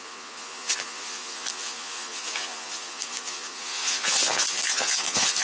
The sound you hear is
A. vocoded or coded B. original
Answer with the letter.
A